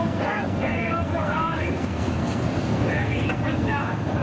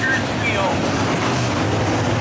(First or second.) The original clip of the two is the second